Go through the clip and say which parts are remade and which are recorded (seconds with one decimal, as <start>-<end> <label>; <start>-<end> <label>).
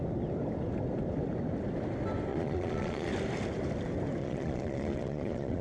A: 0.0-2.3 recorded; 2.3-3.1 remade; 3.1-4.2 recorded; 4.2-5.6 remade